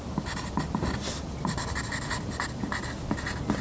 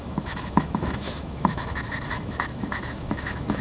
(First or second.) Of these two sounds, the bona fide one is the first